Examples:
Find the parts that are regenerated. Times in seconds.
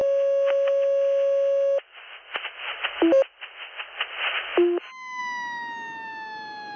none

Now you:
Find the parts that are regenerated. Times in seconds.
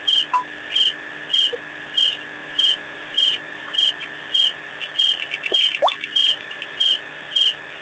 2.4-3.9 (vocoder, BigVGAN v2); 6.2-6.7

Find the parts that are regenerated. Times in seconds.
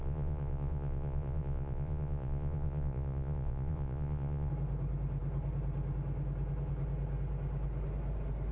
0.0-4.5 (vocoder, Vocos)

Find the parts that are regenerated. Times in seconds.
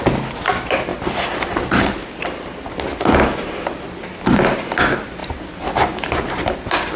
none